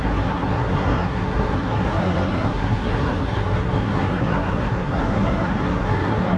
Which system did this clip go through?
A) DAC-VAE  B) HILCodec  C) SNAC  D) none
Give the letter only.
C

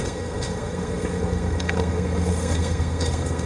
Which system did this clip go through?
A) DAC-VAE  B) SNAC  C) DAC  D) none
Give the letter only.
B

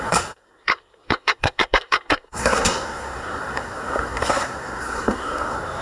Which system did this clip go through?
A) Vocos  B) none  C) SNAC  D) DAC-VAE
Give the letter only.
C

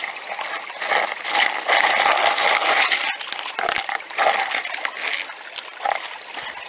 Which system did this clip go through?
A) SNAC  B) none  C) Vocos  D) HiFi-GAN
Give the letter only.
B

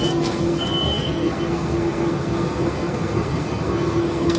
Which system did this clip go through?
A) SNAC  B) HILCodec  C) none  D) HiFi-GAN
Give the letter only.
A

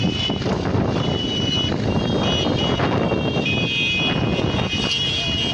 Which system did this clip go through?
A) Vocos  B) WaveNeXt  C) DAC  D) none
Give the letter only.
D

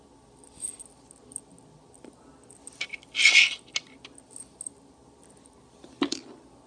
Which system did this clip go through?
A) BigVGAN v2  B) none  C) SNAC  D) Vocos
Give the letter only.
B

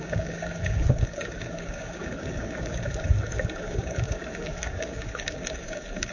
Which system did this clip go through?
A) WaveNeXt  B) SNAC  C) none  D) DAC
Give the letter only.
D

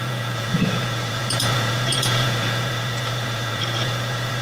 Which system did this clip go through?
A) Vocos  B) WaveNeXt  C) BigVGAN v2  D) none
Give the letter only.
A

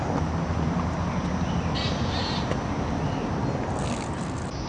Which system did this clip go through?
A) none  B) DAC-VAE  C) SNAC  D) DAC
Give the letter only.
A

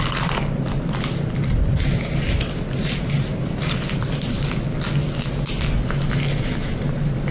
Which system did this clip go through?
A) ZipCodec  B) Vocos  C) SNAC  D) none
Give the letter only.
D